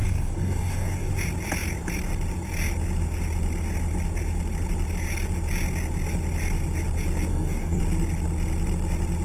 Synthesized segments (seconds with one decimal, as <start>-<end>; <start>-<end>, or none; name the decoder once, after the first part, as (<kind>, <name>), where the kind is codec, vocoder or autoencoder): 0.0-1.1 (codec, DAC); 7.3-7.8

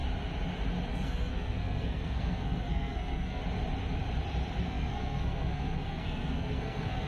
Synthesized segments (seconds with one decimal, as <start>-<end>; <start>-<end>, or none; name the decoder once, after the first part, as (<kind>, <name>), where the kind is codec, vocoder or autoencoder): 0.9-3.4 (codec, SNAC); 4.6-7.1

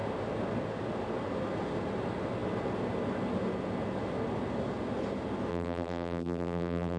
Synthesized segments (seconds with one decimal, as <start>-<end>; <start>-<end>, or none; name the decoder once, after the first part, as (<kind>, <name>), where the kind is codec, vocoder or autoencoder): 5.5-7.0 (vocoder, BigVGAN v2)